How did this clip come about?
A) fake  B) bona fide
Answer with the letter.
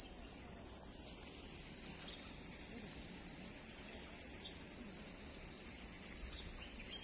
B